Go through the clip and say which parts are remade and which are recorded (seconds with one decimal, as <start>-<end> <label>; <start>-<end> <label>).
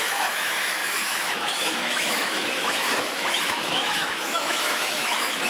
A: 0.0-5.5 remade